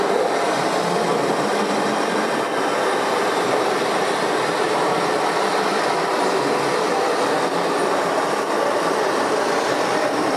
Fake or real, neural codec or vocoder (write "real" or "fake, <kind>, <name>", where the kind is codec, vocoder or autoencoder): fake, vocoder, BigVGAN v2